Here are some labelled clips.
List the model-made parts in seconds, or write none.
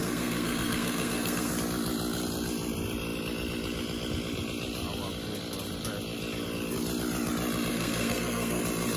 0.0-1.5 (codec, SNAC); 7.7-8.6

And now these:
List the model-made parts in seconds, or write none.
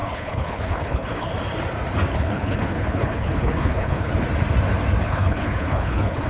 0.0-1.3 (codec, HILCodec); 2.1-4.1; 5.0-6.3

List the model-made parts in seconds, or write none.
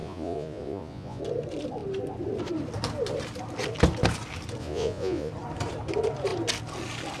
0.0-1.2 (vocoder, Vocos); 4.6-5.3